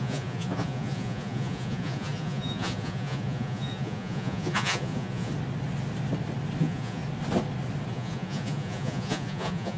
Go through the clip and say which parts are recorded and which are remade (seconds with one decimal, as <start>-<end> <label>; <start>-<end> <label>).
0.0-5.3 remade; 5.3-6.6 recorded; 6.6-7.0 remade; 7.0-7.9 recorded; 7.9-9.8 remade